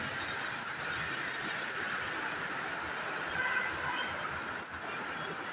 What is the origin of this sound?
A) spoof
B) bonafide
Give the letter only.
B